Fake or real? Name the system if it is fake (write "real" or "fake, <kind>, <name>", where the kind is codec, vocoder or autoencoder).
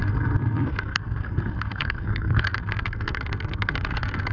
fake, codec, SNAC